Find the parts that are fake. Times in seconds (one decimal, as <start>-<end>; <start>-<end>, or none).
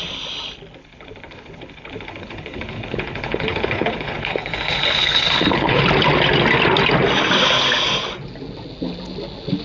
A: 0.8-5.8